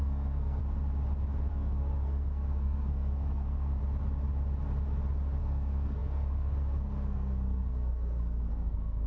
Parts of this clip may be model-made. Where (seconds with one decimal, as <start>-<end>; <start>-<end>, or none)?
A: 0.0-0.6; 1.5-3.8; 5.4-9.1